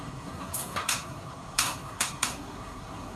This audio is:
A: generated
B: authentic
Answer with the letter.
A